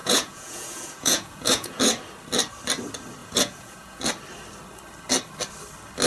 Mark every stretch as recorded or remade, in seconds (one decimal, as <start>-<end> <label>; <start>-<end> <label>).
0.0-1.8 remade; 1.8-3.2 recorded; 3.2-4.0 remade; 4.0-6.1 recorded